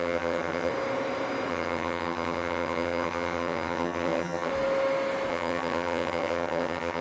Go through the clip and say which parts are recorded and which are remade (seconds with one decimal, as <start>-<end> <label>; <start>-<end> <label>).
0.0-0.7 remade; 0.7-1.5 recorded; 1.5-4.5 remade; 4.5-5.3 recorded; 5.3-7.0 remade